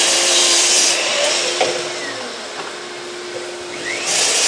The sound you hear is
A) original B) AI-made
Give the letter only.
B